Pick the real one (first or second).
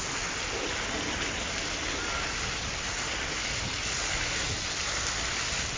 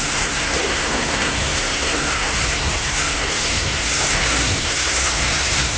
first